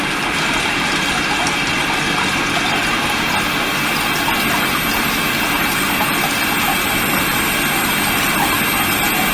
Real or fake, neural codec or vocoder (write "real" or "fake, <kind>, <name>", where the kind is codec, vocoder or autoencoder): real